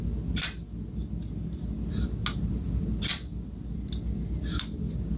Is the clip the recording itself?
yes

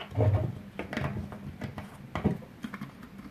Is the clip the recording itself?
yes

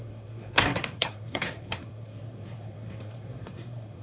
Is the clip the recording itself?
no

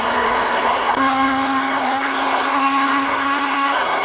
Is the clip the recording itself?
no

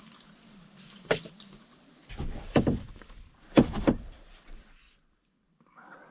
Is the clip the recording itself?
no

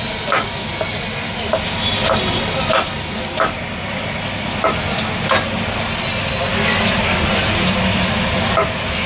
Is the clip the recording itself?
yes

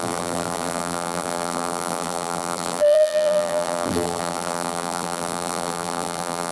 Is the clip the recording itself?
no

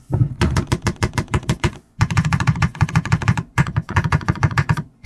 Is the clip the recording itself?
no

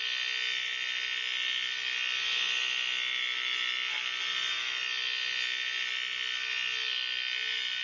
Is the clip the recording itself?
yes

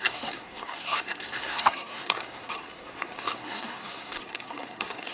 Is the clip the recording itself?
no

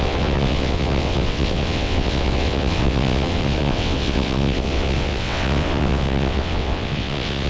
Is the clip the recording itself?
no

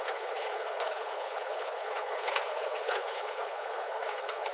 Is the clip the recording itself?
no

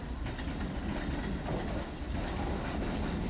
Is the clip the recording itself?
yes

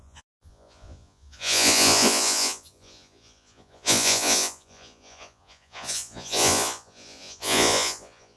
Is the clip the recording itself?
no